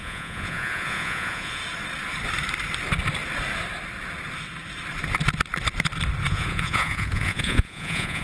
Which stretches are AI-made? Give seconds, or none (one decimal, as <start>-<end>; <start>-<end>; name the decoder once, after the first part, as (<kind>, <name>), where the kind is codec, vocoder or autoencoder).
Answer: 0.0-1.6 (vocoder, Vocos); 6.3-8.2